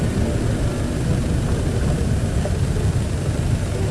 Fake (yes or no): no